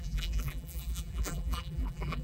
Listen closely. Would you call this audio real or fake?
fake